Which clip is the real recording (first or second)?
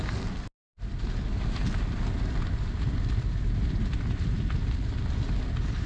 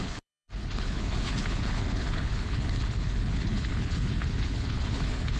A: first